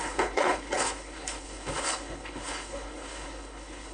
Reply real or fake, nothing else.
fake